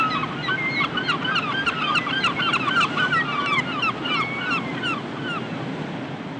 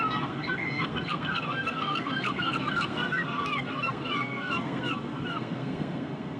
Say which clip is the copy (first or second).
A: second